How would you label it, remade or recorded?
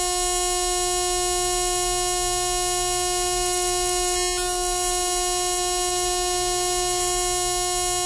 recorded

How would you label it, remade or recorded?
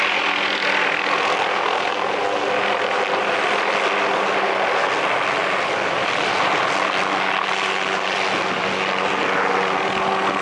recorded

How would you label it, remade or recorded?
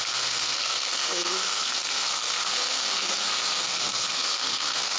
remade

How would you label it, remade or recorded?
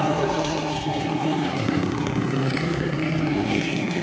remade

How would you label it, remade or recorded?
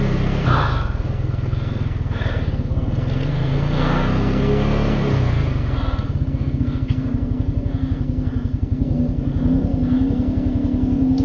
remade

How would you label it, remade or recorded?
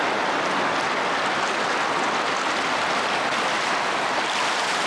recorded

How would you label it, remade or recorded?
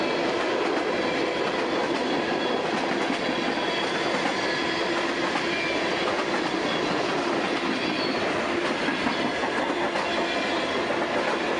recorded